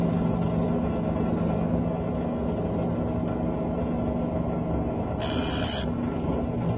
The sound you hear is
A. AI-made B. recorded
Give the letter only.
B